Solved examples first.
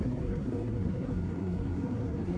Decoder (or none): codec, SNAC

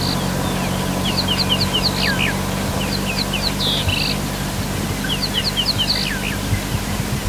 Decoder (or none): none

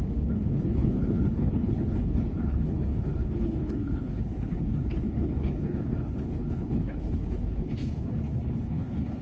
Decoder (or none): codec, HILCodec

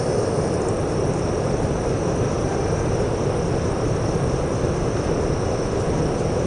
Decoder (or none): none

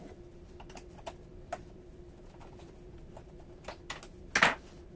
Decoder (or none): none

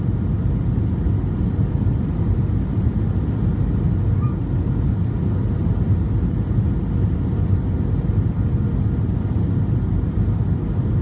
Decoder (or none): none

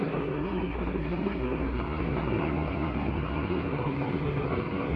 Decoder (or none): codec, SNAC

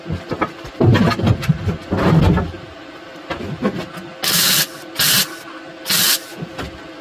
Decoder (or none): none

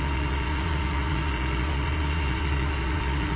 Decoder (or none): vocoder, Vocos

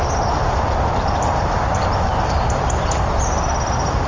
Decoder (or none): none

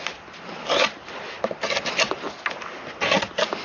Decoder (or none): none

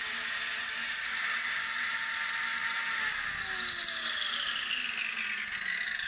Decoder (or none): none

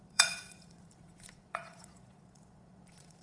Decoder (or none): vocoder, Vocos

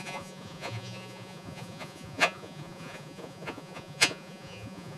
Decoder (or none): vocoder, Vocos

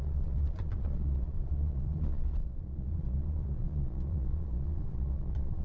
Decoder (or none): vocoder, Vocos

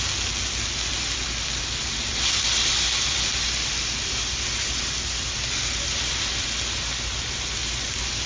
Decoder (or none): none